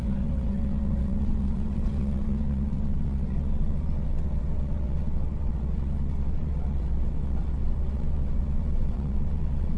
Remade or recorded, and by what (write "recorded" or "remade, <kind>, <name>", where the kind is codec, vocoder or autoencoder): remade, vocoder, WaveNeXt